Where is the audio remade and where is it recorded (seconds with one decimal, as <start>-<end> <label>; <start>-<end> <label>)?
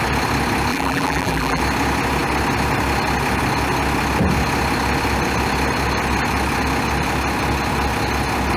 0.0-0.7 recorded; 0.7-1.6 remade; 1.6-8.6 recorded